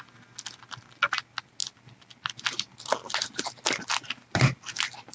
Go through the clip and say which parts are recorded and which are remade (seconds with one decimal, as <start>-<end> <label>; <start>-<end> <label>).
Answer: 0.0-5.1 recorded